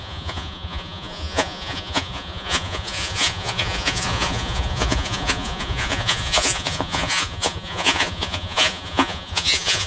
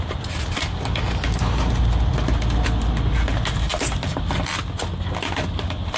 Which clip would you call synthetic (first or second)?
first